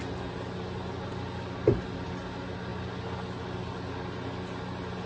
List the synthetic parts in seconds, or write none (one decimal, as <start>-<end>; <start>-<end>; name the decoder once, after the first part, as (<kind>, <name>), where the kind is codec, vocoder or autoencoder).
none

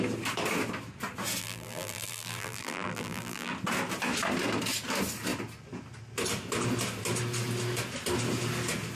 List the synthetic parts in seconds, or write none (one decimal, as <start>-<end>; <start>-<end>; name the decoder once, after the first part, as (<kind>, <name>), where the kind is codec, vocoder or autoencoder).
1.4-3.5 (vocoder, BigVGAN v2)

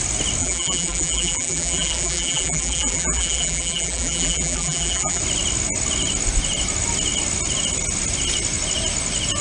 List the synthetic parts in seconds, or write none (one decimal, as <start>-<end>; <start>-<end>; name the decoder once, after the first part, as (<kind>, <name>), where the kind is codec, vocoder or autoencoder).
0.4-5.2 (vocoder, BigVGAN v2)

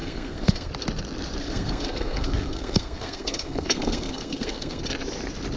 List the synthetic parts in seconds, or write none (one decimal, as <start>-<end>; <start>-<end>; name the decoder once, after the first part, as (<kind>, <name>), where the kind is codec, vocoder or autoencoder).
0.0-0.7 (codec, SNAC); 1.4-4.8

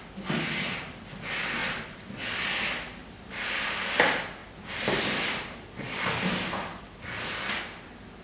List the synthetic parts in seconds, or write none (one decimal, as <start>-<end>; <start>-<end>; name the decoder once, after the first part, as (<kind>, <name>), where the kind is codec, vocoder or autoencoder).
1.6-2.6 (vocoder, BigVGAN v2); 3.0-3.8; 4.4-7.6